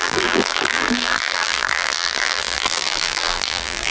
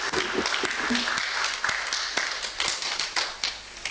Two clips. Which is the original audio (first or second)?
second